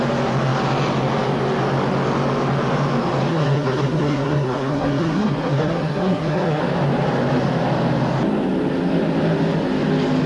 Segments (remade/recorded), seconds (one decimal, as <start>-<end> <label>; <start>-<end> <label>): 0.0-3.3 recorded; 3.3-6.6 remade; 6.6-10.3 recorded